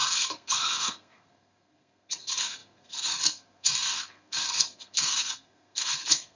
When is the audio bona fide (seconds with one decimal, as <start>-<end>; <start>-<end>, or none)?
none